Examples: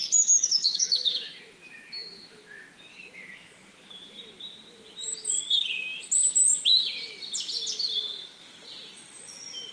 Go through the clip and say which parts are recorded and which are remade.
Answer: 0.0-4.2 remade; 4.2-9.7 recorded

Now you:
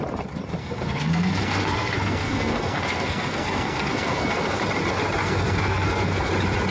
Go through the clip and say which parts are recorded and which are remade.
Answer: 0.0-0.6 recorded; 0.6-4.6 remade; 4.6-5.2 recorded; 5.2-6.3 remade; 6.3-6.7 recorded

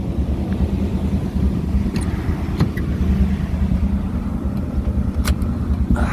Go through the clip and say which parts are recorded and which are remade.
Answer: 0.0-0.5 recorded; 0.5-2.0 remade; 2.0-6.1 recorded

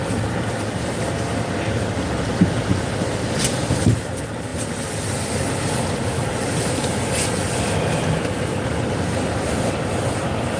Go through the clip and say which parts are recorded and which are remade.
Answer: 0.0-10.6 recorded

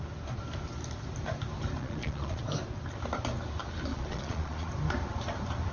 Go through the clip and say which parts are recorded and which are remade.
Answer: 0.0-1.8 recorded; 1.8-2.4 remade; 2.4-3.9 recorded; 3.9-4.7 remade; 4.7-5.7 recorded

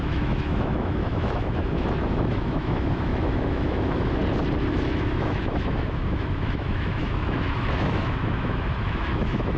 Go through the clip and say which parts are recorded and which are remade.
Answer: 0.0-4.2 remade; 4.2-4.7 recorded; 4.7-9.6 remade

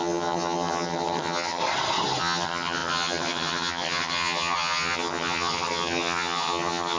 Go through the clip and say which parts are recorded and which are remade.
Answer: 0.0-1.6 remade; 1.6-2.2 recorded; 2.2-7.0 remade

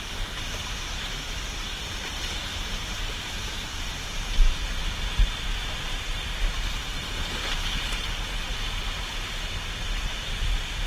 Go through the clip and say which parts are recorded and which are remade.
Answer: 0.0-10.9 recorded